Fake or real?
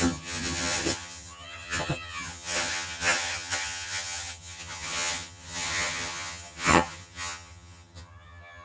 fake